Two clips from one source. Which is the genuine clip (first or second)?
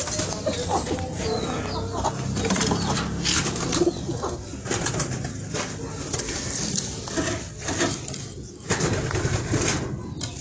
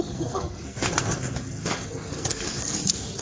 first